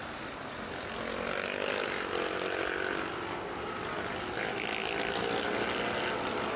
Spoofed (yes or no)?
no